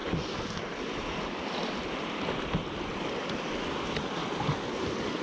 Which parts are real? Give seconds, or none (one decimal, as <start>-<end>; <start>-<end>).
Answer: 0.0-5.2